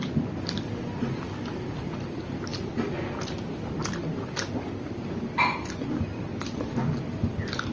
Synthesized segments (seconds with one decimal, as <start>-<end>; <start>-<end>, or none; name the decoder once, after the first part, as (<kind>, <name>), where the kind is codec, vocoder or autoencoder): none